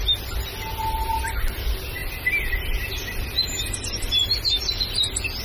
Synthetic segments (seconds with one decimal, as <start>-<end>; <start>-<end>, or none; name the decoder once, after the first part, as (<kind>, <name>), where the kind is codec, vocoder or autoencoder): none

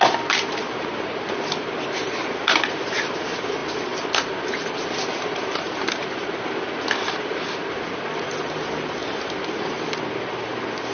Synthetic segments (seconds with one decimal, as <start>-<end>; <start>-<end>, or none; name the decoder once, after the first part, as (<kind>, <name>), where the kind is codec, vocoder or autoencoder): none

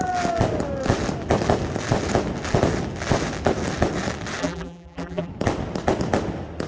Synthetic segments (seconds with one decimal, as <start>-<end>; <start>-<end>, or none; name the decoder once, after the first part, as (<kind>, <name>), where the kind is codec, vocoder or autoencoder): 4.4-5.3 (vocoder, BigVGAN v2)

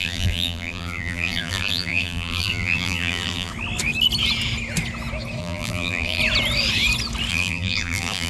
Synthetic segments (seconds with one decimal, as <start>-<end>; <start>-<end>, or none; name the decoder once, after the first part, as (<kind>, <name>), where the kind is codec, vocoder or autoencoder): 0.0-3.5 (vocoder, BigVGAN v2); 5.4-6.2; 7.3-8.3

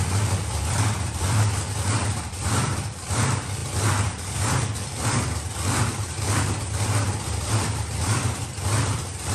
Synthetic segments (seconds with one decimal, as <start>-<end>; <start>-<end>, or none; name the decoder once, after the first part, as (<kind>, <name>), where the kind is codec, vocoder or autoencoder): 0.0-9.3 (vocoder, BigVGAN v2)